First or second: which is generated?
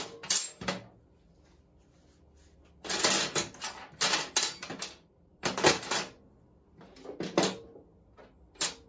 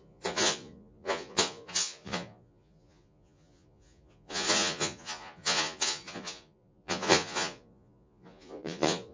second